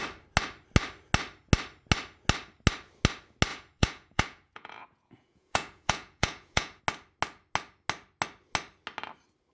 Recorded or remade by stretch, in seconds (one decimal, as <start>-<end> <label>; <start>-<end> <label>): 0.0-3.5 recorded; 3.5-6.8 remade; 6.8-9.5 recorded